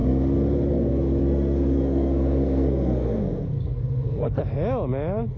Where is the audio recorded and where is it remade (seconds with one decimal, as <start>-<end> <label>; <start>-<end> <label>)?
0.0-1.2 recorded; 1.2-4.4 remade; 4.4-5.4 recorded